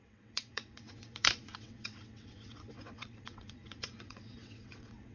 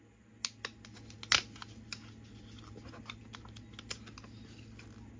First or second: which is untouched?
second